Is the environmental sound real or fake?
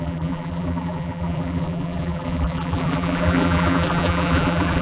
fake